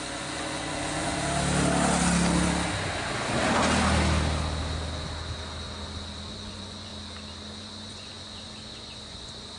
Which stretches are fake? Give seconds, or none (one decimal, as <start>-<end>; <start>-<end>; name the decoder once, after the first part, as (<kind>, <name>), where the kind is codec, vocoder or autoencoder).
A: 0.0-1.1 (vocoder, Vocos); 6.3-6.9; 7.6-9.6